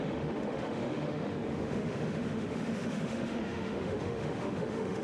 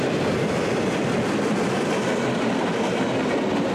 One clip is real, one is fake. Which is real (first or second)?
second